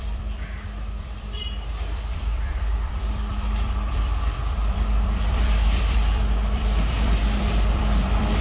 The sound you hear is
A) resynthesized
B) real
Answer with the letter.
A